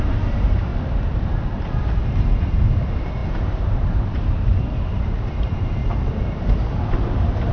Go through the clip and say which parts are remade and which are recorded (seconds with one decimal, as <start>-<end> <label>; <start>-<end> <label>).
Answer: 0.0-0.7 remade; 0.7-2.0 recorded; 2.0-5.8 remade; 5.8-6.4 recorded; 6.4-7.5 remade